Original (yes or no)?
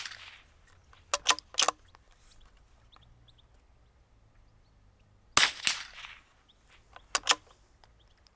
yes